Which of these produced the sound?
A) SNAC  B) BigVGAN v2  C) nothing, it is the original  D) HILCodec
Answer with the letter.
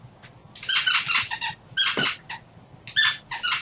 C